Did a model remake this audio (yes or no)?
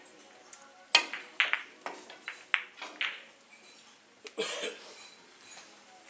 no